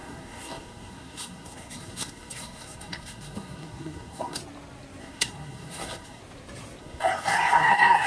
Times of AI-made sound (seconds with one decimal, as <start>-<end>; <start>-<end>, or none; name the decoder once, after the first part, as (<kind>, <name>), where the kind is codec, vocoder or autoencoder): 0.0-4.4 (codec, SNAC); 5.0-6.2; 6.8-8.1